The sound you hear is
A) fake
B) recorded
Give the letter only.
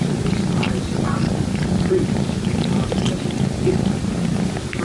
B